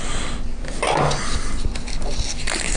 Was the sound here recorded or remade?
recorded